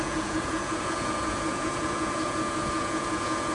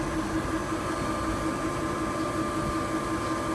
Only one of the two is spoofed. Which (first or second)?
first